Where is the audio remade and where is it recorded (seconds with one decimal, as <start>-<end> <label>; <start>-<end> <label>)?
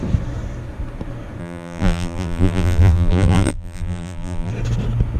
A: 0.0-1.4 recorded; 1.4-4.5 remade; 4.5-5.2 recorded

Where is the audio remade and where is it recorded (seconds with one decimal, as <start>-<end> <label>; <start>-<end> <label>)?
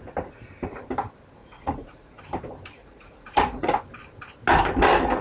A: 0.0-1.4 recorded; 1.4-2.2 remade; 2.2-2.8 recorded; 2.8-3.8 remade; 3.8-5.2 recorded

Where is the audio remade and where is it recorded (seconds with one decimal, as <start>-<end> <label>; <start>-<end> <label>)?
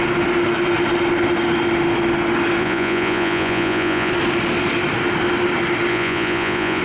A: 0.0-2.6 recorded; 2.6-4.1 remade; 4.1-5.9 recorded; 5.9-6.8 remade